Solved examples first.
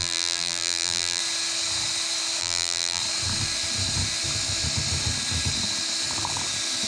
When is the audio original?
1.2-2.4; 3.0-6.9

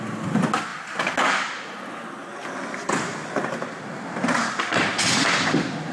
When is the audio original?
0.0-5.9

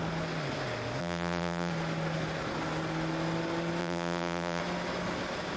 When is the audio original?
0.0-1.0; 1.7-3.8; 4.6-5.6

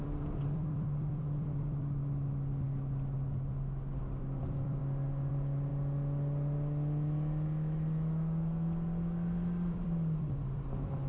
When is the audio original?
2.0-4.0; 4.8-5.3; 5.7-9.7

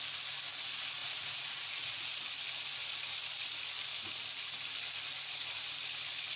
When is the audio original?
0.0-1.0; 2.0-6.4